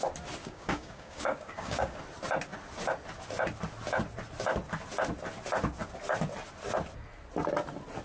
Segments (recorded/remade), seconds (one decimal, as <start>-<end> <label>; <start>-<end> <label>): 0.0-0.4 recorded; 0.4-2.0 remade; 2.0-8.0 recorded